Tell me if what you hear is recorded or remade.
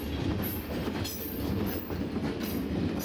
recorded